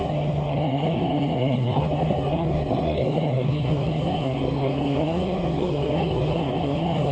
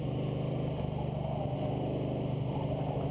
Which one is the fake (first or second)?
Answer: first